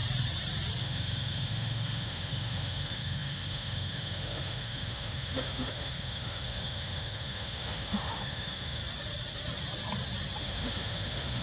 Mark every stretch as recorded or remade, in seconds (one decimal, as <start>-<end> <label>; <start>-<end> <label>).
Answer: 0.0-0.8 recorded; 0.8-8.8 remade; 8.8-10.4 recorded; 10.4-11.4 remade